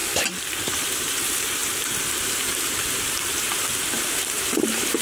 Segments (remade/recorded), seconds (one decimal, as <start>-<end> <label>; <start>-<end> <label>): 0.0-0.7 recorded; 0.7-5.0 remade